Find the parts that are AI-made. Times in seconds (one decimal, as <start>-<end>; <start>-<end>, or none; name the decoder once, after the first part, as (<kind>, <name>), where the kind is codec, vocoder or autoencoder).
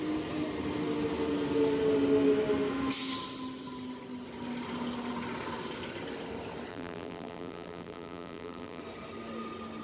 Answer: 6.7-8.8 (vocoder, BigVGAN v2)